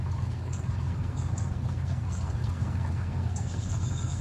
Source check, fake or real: fake